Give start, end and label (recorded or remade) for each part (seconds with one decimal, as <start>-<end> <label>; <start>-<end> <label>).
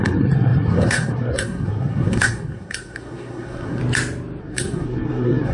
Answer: 0.0-3.8 remade; 3.8-4.4 recorded; 4.4-5.5 remade